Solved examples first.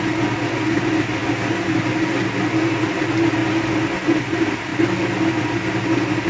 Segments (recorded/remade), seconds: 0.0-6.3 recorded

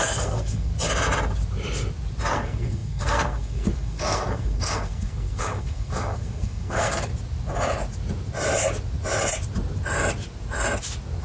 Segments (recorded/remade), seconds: 0.0-0.7 remade; 0.7-2.3 recorded; 2.3-7.1 remade; 7.1-11.2 recorded

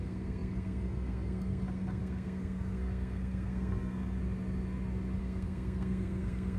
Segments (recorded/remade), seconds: 0.0-4.2 remade; 4.2-5.2 recorded; 5.2-6.6 remade

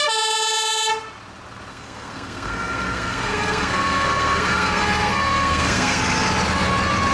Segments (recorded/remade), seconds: 0.0-1.7 recorded; 1.7-6.0 remade; 6.0-7.1 recorded

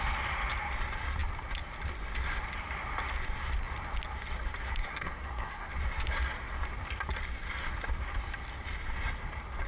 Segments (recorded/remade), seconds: 0.0-4.8 recorded; 4.8-5.7 remade; 5.7-9.7 recorded

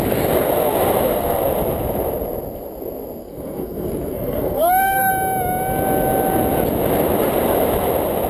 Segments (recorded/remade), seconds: 0.0-3.2 recorded; 3.2-5.1 remade; 5.1-8.3 recorded

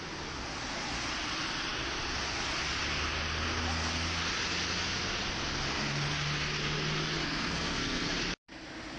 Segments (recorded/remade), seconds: 0.0-7.2 recorded; 7.2-8.1 remade; 8.1-9.0 recorded

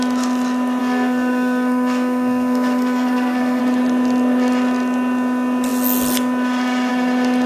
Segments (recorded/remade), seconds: 0.0-0.8 recorded; 0.8-3.6 remade; 3.6-7.5 recorded